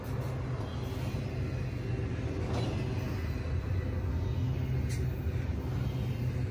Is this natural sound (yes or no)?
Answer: yes